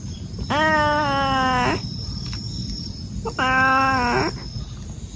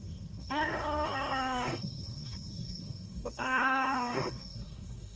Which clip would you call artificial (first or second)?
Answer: second